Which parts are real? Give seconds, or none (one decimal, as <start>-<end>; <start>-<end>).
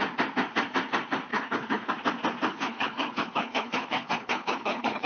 0.0-1.3; 1.9-2.5